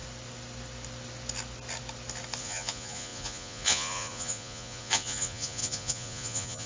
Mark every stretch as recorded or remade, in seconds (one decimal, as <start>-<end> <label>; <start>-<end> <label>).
0.0-2.4 recorded; 2.4-6.7 remade